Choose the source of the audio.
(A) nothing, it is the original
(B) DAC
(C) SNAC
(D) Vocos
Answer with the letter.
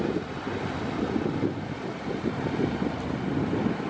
A